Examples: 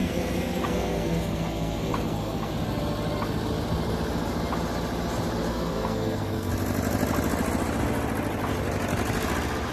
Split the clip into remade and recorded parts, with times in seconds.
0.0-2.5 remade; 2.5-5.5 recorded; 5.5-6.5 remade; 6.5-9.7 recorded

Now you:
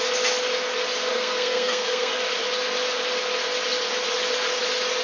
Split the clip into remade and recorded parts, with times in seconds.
0.0-1.1 recorded; 1.1-2.1 remade; 2.1-5.0 recorded

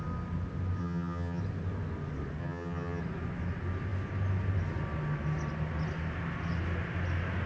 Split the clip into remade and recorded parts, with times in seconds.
0.0-0.8 recorded; 0.8-1.4 remade; 1.4-2.4 recorded; 2.4-3.0 remade; 3.0-7.5 recorded

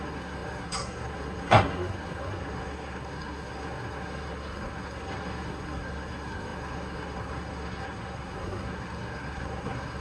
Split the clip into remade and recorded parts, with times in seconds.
0.0-10.0 remade

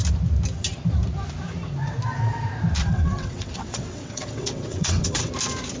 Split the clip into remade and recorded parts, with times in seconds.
0.0-2.8 recorded; 2.8-5.3 remade; 5.3-5.8 recorded

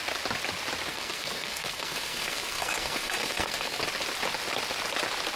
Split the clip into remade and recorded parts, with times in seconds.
0.0-0.9 recorded; 0.9-3.8 remade; 3.8-5.4 recorded

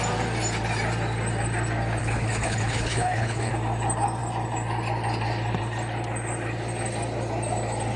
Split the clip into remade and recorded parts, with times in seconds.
0.0-2.0 recorded; 2.0-3.5 remade; 3.5-8.0 recorded